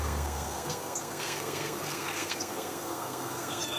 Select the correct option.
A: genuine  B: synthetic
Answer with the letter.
B